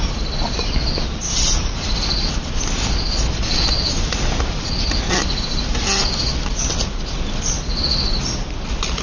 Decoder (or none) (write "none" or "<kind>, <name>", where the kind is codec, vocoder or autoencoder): none